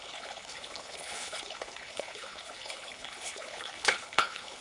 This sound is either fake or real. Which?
fake